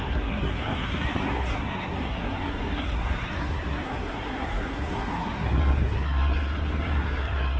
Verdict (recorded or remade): remade